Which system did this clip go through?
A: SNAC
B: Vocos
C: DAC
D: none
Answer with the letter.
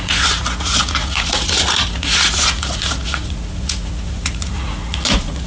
B